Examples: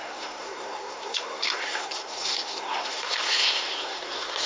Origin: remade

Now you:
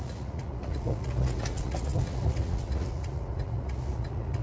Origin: remade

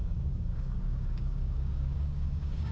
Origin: remade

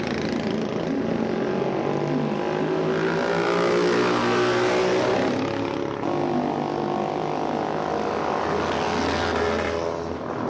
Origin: recorded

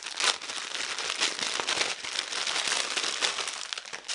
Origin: recorded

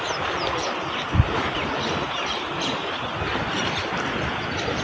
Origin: recorded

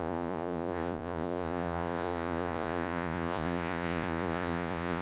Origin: remade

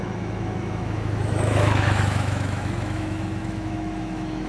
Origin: remade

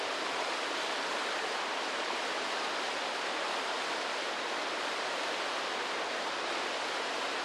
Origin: recorded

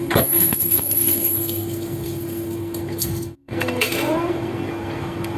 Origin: remade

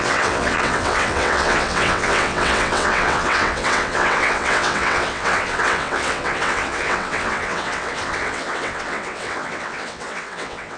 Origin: remade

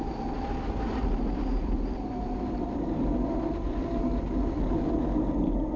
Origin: recorded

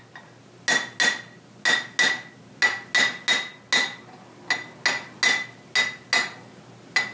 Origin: recorded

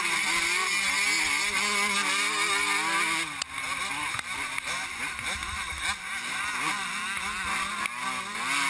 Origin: recorded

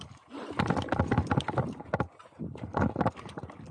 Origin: recorded